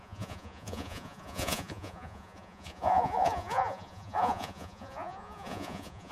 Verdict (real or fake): fake